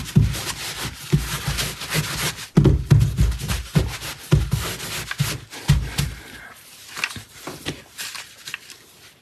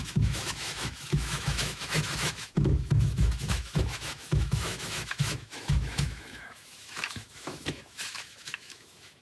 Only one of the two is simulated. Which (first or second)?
second